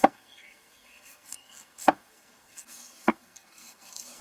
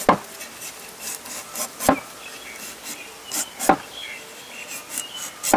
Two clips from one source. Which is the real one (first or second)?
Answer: second